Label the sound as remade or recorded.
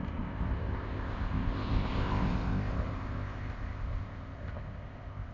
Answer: remade